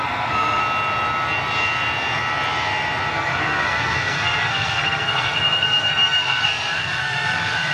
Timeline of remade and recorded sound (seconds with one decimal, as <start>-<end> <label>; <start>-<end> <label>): 0.0-0.6 remade; 0.6-3.1 recorded; 3.1-7.7 remade